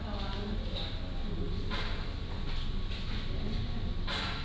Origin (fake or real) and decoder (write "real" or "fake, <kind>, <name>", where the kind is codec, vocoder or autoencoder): real